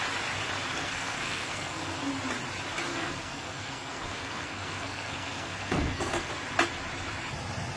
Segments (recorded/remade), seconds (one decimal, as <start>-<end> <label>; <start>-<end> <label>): 0.0-0.7 recorded; 0.7-2.1 remade; 2.1-2.9 recorded; 2.9-6.3 remade; 6.3-7.8 recorded